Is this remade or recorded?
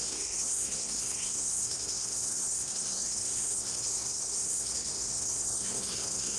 remade